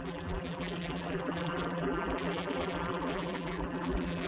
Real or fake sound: fake